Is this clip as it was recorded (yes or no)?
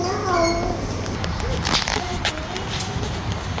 yes